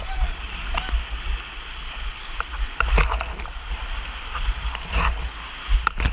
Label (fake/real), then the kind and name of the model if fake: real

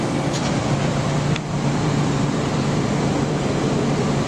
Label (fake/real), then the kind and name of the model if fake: fake, vocoder, BigVGAN v2